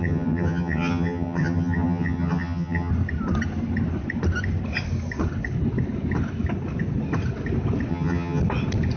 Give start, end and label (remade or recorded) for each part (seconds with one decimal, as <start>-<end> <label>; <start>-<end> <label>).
0.0-2.9 remade; 2.9-7.9 recorded; 7.9-8.4 remade; 8.4-9.0 recorded